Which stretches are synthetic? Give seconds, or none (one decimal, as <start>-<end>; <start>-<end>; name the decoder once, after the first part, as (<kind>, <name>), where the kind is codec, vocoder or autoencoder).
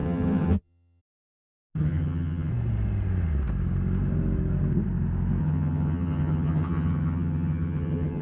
0.0-1.0 (vocoder, HiFi-GAN); 1.8-2.5; 5.4-8.2